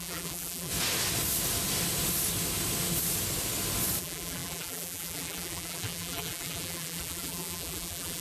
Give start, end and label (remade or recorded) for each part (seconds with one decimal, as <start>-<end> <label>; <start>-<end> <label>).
0.0-0.7 remade; 0.7-4.0 recorded; 4.0-8.2 remade